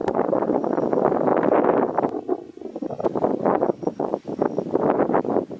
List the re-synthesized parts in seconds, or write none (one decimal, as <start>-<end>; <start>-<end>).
0.0-0.8; 3.3-4.1